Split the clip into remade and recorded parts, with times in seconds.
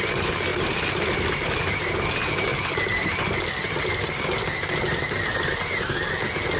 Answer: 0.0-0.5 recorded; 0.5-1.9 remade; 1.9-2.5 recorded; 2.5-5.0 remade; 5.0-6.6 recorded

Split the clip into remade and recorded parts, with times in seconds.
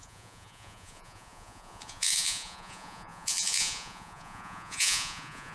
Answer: 0.0-5.5 remade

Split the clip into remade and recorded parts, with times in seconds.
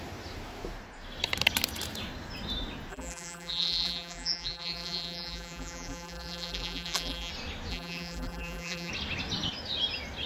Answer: 0.0-2.9 recorded; 2.9-7.3 remade; 7.3-7.7 recorded; 7.7-8.9 remade; 8.9-10.3 recorded